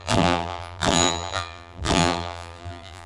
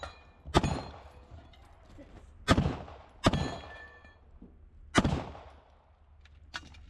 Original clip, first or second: second